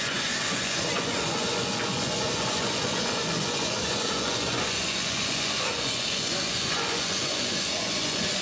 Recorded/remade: remade